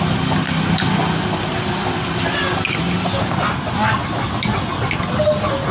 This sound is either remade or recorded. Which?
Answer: recorded